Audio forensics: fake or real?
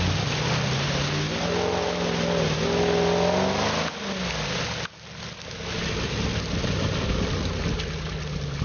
real